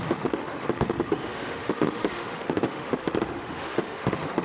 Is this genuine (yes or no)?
no